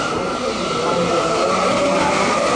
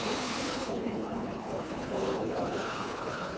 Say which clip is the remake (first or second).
second